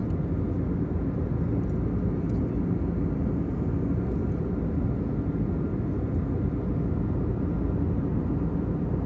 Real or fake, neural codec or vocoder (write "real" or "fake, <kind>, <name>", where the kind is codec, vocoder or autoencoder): real